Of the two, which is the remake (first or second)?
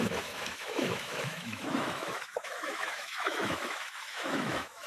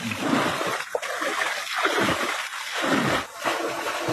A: first